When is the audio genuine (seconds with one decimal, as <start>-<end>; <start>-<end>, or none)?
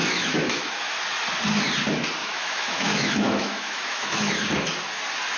1.0-2.2; 4.3-5.4